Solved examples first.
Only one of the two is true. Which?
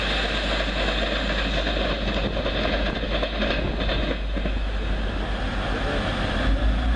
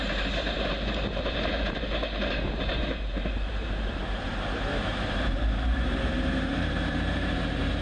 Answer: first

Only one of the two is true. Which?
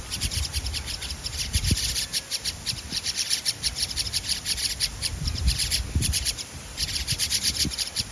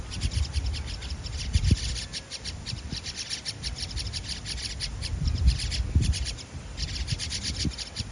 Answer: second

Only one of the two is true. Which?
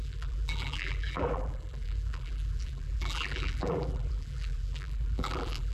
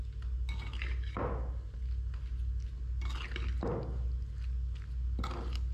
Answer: second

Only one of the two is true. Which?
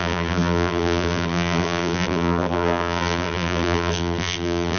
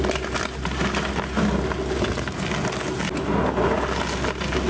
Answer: second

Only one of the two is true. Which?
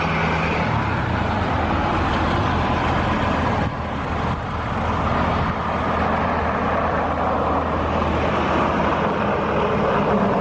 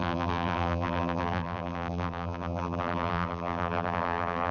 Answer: first